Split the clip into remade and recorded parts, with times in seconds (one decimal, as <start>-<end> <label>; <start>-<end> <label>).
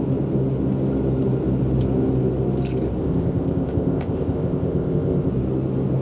0.0-3.0 recorded; 3.0-5.3 remade; 5.3-6.0 recorded